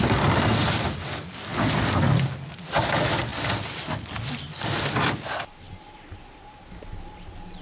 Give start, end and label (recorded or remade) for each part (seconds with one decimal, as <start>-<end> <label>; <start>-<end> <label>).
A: 0.0-1.5 recorded; 1.5-2.5 remade; 2.5-7.6 recorded